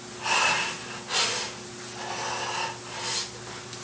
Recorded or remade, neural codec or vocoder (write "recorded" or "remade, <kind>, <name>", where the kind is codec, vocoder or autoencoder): recorded